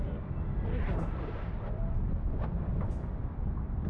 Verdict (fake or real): real